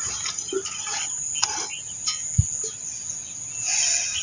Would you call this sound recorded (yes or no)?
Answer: yes